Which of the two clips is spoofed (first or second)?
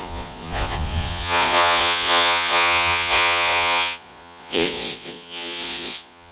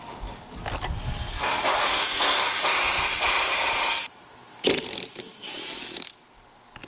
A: first